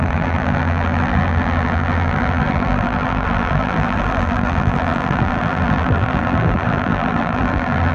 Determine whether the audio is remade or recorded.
remade